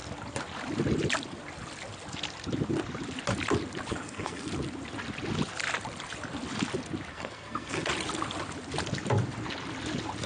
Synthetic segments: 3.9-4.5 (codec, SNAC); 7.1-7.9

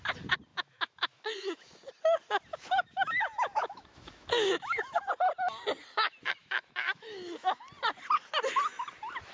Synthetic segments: 0.5-1.7 (autoencoder, DAC-VAE); 2.5-5.1; 6.4-7.6